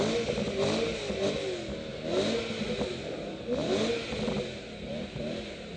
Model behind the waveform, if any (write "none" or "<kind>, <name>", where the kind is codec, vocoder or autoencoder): none